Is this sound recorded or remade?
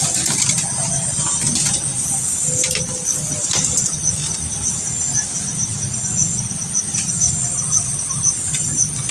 recorded